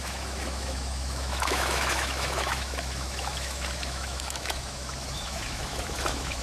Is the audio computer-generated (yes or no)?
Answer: yes